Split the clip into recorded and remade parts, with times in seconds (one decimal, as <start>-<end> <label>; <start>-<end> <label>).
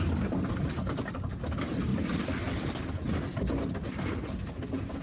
0.0-5.0 recorded